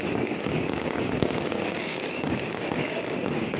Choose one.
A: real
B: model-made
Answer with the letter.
B